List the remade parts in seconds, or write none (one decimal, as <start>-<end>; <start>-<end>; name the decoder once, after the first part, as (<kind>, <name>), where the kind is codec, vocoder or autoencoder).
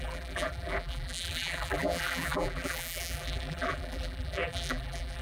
0.0-5.2 (vocoder, BigVGAN v2)